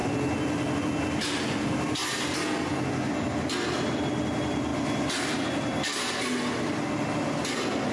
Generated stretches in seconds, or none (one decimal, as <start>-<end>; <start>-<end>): none